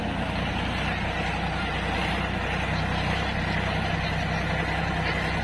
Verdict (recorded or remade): recorded